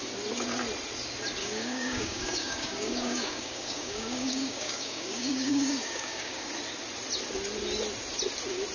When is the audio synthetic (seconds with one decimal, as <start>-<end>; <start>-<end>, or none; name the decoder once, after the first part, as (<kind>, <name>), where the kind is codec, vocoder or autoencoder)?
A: 1.4-6.5 (codec, DAC)